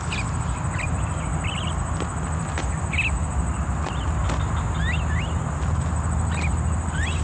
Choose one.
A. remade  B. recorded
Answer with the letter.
B